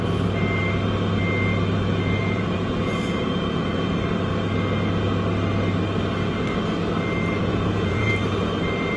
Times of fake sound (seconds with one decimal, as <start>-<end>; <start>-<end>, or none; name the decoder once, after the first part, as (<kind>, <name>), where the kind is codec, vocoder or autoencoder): 2.2-3.9 (vocoder, Vocos); 7.5-8.1